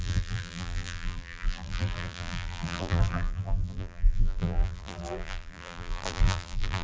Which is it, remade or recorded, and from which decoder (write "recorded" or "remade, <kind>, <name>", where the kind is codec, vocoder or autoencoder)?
remade, vocoder, BigVGAN v2